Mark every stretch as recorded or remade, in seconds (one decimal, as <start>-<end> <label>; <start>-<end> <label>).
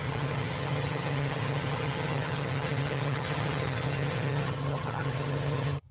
0.0-5.9 remade